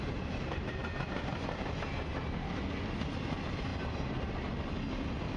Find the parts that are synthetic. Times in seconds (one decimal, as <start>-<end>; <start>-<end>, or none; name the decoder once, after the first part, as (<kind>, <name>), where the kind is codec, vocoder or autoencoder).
none